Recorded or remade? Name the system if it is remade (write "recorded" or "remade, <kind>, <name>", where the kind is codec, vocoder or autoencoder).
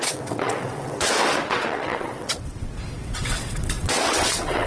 remade, vocoder, WaveNeXt